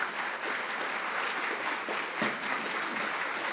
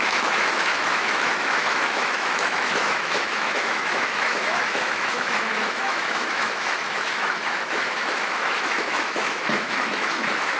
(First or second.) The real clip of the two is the first